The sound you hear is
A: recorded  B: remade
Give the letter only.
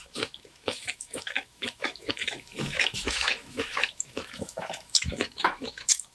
B